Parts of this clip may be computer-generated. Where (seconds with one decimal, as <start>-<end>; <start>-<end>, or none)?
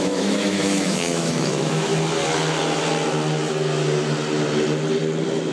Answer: 0.0-1.9